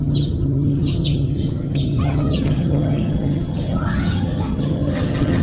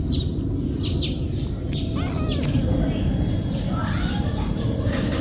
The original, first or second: second